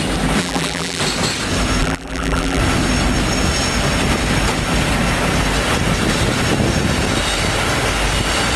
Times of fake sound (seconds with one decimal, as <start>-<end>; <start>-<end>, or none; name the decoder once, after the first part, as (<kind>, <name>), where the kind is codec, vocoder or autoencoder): 0.4-1.0 (vocoder, BigVGAN v2); 1.8-2.6